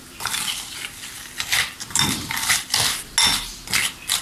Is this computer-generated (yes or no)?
no